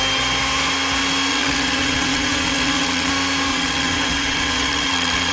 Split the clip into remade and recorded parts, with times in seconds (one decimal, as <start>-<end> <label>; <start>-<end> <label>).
0.0-1.3 recorded; 1.3-3.1 remade; 3.1-3.5 recorded; 3.5-5.3 remade